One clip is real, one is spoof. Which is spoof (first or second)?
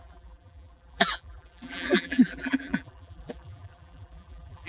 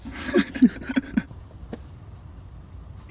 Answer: first